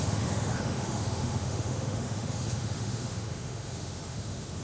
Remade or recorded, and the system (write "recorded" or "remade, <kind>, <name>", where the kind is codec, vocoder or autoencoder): remade, autoencoder, DAC-VAE